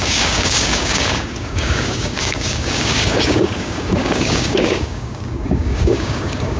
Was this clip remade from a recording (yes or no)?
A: yes